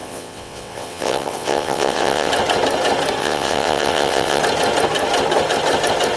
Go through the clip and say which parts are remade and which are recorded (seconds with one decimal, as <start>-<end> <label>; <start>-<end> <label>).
0.0-2.3 remade; 2.3-3.2 recorded; 3.2-4.4 remade; 4.4-6.2 recorded